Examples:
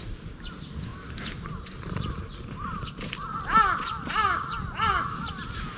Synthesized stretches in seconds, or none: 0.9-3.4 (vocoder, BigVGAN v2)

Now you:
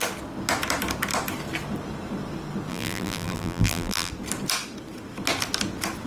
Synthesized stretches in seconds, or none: 2.7-4.1 (vocoder, BigVGAN v2)